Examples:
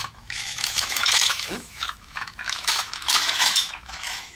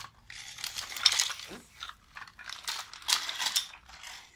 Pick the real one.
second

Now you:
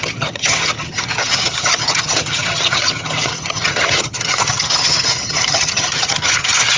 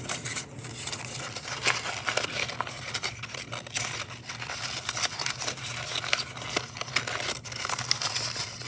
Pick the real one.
second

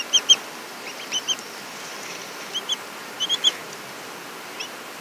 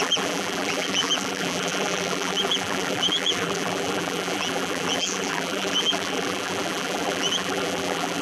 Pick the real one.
first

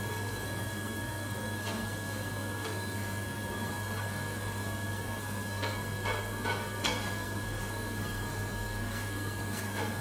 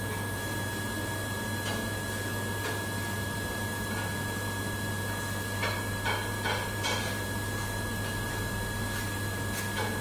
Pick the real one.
second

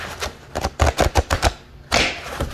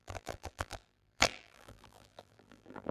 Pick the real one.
first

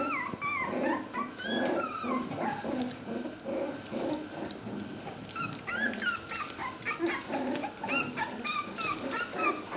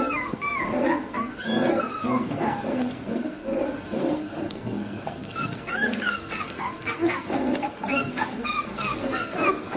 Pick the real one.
first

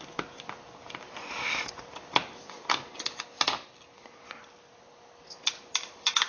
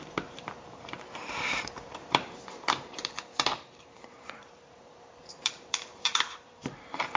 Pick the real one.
first